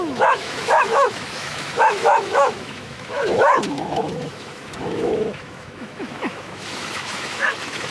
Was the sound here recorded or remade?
remade